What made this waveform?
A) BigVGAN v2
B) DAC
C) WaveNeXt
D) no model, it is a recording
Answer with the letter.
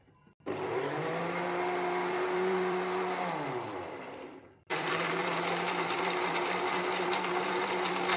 A